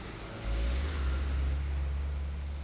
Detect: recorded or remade recorded